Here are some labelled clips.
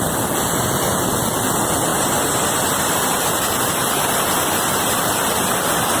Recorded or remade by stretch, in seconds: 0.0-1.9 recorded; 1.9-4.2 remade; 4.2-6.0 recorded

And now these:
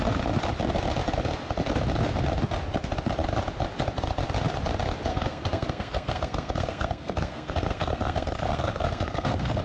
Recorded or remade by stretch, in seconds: 0.0-5.1 recorded; 5.1-9.6 remade